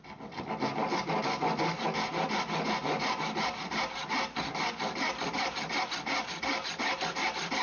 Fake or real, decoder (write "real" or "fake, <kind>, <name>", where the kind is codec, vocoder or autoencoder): real